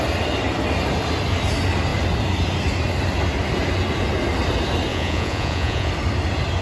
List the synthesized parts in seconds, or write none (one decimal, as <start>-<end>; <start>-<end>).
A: 4.9-5.9